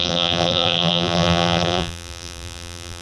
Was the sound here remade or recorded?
remade